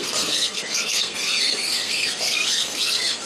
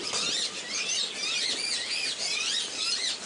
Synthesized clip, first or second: first